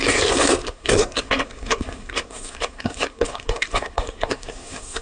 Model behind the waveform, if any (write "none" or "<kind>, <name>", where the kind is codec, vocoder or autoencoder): codec, SNAC